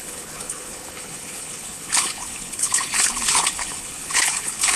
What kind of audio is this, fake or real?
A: fake